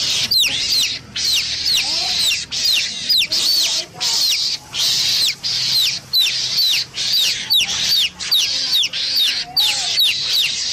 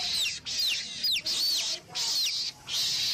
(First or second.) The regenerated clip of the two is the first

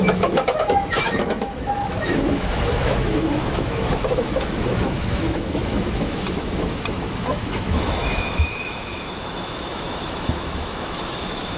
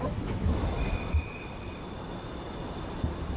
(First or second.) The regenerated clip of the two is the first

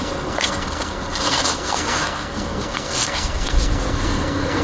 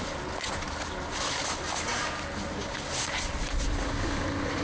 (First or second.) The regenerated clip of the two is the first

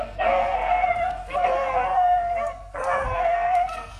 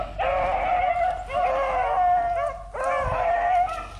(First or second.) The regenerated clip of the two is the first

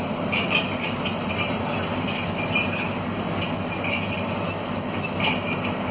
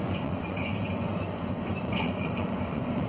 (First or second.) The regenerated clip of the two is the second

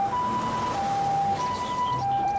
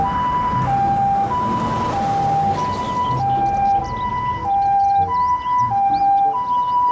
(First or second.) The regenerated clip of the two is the first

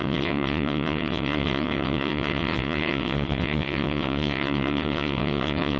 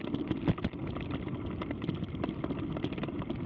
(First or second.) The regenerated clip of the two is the first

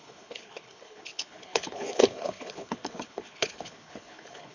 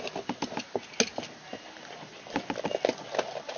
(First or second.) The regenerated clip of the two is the first